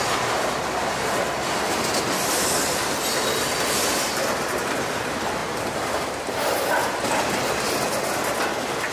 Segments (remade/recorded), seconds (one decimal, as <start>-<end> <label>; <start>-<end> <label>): 0.0-5.4 recorded; 5.4-6.2 remade; 6.2-8.9 recorded

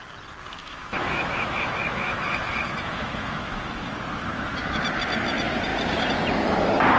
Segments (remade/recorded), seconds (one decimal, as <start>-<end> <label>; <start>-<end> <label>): 0.0-0.6 recorded; 0.6-4.8 remade; 4.8-7.0 recorded